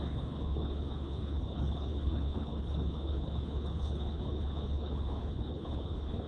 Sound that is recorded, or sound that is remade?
remade